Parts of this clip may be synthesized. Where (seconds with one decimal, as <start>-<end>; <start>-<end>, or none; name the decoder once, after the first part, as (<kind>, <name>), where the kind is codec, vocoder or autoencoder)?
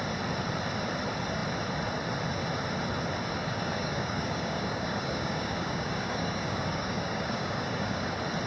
3.4-8.1 (codec, DAC)